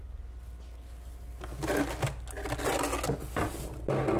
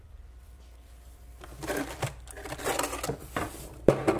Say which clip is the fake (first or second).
second